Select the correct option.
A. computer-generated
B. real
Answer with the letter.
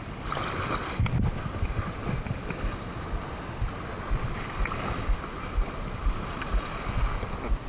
B